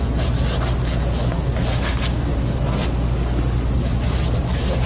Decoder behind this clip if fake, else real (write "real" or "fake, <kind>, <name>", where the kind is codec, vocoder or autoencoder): real